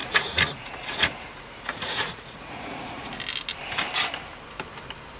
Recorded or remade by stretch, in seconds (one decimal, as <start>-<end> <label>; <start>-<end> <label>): 0.0-3.1 remade; 3.1-5.2 recorded